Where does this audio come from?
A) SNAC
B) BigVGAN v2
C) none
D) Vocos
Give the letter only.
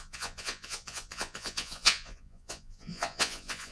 D